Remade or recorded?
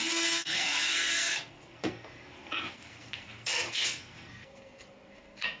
remade